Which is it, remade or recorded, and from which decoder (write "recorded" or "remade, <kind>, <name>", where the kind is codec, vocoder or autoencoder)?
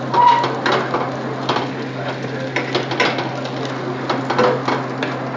recorded